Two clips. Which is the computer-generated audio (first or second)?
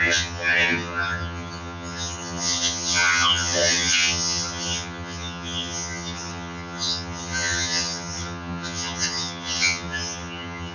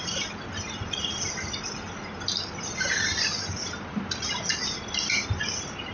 first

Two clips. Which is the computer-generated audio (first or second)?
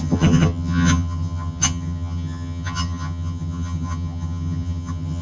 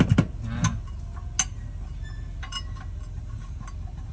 first